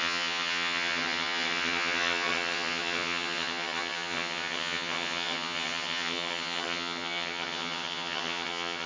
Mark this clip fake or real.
fake